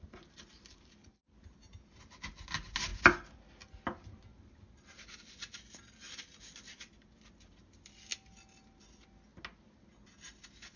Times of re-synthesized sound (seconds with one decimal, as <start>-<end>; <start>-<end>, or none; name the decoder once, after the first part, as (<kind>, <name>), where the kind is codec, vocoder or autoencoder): none